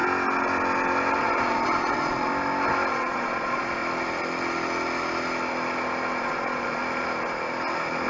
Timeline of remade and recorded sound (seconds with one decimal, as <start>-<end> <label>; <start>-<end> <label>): 0.0-1.2 recorded; 1.2-2.3 remade; 2.3-2.9 recorded; 2.9-3.8 remade; 3.8-6.2 recorded; 6.2-6.8 remade; 6.8-8.1 recorded